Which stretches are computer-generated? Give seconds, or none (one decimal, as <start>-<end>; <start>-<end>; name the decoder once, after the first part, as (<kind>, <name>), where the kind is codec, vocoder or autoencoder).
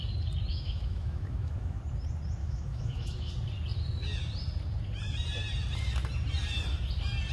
0.5-1.8 (autoencoder, DAC-VAE); 2.4-3.3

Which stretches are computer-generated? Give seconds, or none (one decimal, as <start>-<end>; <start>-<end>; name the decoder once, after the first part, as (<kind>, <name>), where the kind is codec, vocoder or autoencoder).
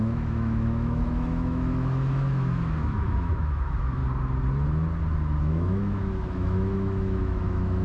0.0-4.0 (autoencoder, DAC-VAE); 5.4-7.8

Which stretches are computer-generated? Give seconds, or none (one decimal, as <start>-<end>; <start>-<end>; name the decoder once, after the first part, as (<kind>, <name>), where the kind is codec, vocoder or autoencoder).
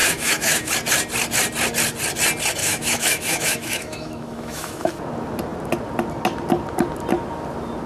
0.0-0.7 (autoencoder, DAC-VAE); 2.6-4.9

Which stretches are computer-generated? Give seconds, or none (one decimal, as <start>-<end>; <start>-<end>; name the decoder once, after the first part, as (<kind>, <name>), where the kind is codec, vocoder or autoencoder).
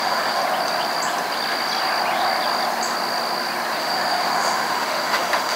0.0-0.4 (autoencoder, DAC-VAE); 3.8-5.6